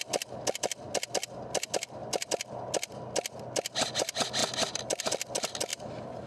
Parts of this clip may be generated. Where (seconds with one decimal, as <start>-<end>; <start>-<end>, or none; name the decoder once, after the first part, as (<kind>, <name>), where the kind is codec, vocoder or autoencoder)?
5.7-6.3 (vocoder, BigVGAN v2)